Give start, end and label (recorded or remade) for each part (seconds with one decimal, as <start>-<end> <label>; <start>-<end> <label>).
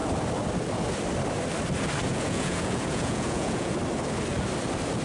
0.0-2.1 recorded; 2.1-3.7 remade; 3.7-5.0 recorded